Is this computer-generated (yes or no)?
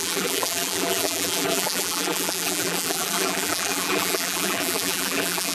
yes